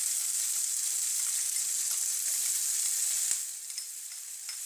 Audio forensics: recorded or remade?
recorded